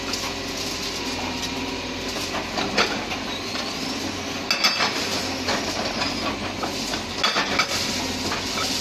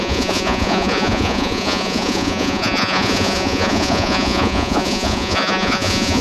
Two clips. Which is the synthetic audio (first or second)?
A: second